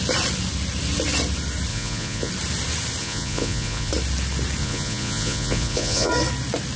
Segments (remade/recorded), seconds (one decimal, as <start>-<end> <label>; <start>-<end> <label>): 0.0-1.7 recorded; 1.7-2.3 remade; 2.3-3.0 recorded; 3.0-3.9 remade; 3.9-4.6 recorded; 4.6-6.1 remade; 6.1-6.8 recorded